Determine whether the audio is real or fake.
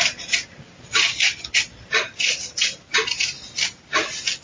real